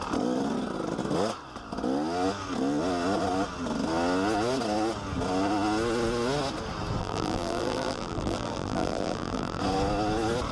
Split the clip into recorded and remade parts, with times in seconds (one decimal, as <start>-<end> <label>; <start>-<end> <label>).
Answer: 0.0-7.0 recorded; 7.0-9.6 remade; 9.6-10.5 recorded